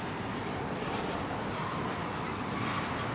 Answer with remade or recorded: recorded